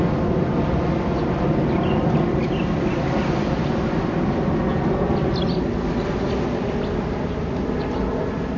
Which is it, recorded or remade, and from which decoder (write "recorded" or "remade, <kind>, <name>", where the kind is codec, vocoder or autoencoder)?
recorded